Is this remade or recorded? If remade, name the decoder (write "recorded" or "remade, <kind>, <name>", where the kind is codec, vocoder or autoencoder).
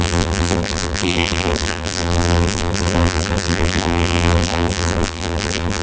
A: remade, vocoder, BigVGAN v2